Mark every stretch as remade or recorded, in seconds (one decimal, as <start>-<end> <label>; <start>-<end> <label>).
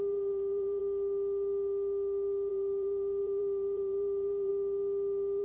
0.0-0.8 remade; 0.8-2.5 recorded; 2.5-4.5 remade; 4.5-5.4 recorded